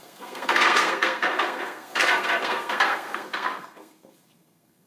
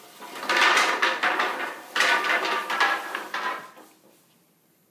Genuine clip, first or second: second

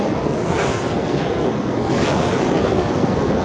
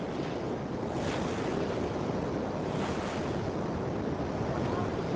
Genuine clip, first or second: second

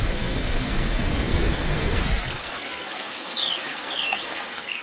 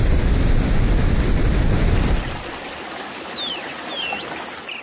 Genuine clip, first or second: second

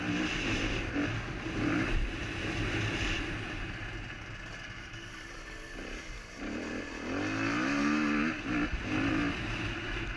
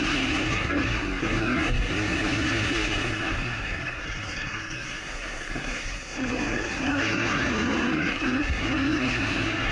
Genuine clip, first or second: first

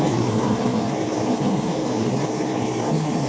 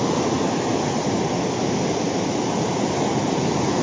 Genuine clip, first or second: second